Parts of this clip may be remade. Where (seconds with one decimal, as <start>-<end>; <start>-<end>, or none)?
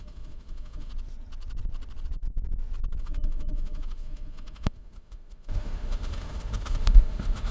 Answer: 0.0-0.9; 3.0-7.5